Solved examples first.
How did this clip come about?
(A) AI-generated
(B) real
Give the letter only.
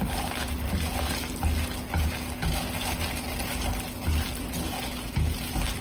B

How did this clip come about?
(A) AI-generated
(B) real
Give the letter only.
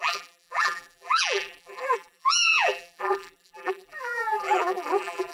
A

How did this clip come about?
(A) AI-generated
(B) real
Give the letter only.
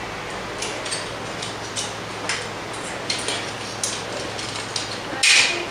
B